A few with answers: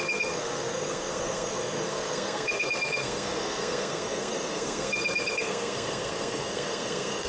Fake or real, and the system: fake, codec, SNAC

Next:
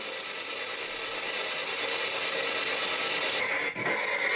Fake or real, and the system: real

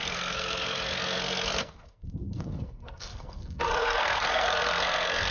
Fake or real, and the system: fake, codec, SNAC